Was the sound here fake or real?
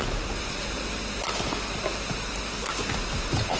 real